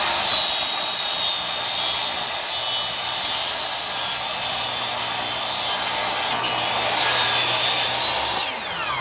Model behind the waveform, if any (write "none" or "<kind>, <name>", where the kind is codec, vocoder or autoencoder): none